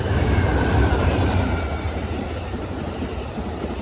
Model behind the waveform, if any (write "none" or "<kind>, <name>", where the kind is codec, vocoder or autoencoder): vocoder, BigVGAN v2